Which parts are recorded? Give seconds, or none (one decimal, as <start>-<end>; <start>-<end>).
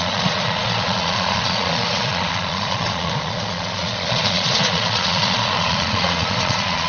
none